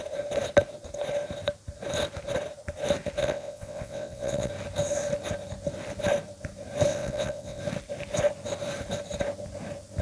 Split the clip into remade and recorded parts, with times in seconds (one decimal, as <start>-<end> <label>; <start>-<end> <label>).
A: 0.0-3.2 recorded; 3.2-4.5 remade; 4.5-6.9 recorded; 6.9-7.6 remade; 7.6-10.0 recorded